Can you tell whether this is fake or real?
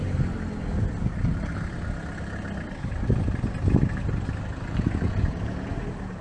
real